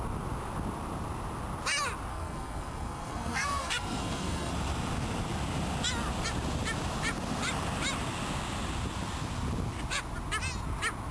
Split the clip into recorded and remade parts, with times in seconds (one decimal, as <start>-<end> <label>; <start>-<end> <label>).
0.0-2.1 recorded; 2.1-4.5 remade; 4.5-11.1 recorded